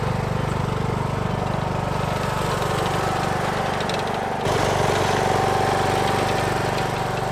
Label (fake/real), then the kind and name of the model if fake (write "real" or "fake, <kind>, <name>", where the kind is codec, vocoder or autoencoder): real